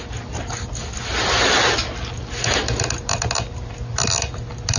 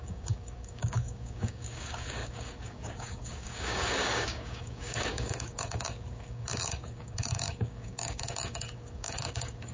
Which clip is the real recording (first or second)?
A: first